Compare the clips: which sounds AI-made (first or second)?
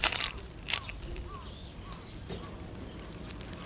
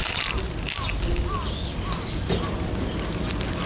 first